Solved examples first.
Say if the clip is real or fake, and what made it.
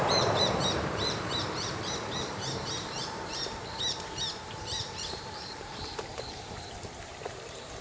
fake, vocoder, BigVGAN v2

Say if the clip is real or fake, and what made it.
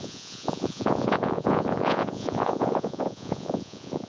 fake, vocoder, Vocos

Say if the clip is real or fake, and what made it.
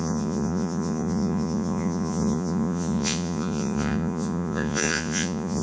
fake, vocoder, Vocos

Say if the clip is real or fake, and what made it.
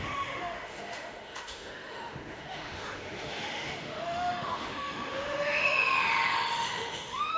fake, autoencoder, DAC-VAE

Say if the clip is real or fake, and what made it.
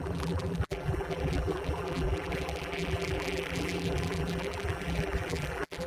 fake, vocoder, BigVGAN v2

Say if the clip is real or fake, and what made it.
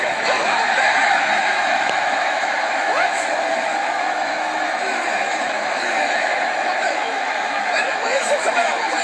fake, autoencoder, DAC-VAE